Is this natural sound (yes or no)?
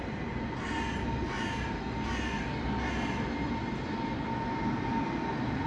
yes